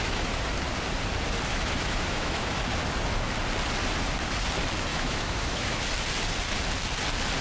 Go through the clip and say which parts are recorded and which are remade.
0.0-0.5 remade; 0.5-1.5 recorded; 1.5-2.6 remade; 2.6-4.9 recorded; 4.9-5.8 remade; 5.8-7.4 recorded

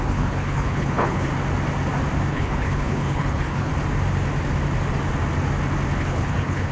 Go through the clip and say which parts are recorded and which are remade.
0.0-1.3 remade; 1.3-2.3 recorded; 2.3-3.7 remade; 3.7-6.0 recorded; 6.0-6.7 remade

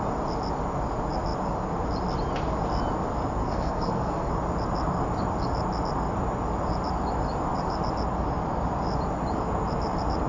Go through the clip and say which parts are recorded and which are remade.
0.0-3.4 recorded; 3.4-4.3 remade; 4.3-10.3 recorded

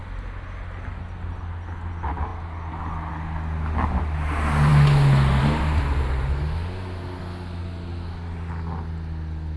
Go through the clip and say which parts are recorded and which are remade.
0.0-9.6 recorded

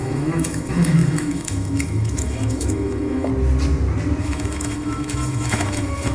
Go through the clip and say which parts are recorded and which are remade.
0.0-3.3 remade; 3.3-4.2 recorded; 4.2-6.1 remade